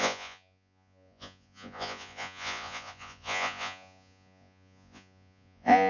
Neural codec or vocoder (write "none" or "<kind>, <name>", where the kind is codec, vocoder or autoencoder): vocoder, Vocos